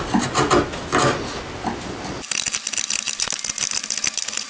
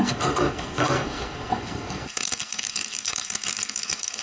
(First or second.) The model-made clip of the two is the second